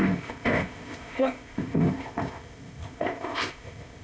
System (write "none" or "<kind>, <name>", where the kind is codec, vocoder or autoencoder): codec, ZipCodec